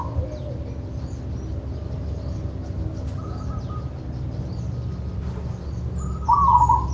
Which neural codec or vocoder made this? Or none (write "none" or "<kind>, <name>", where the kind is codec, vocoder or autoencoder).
none